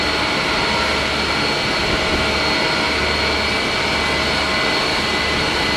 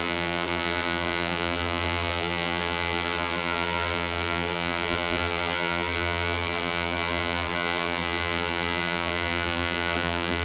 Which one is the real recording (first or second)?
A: first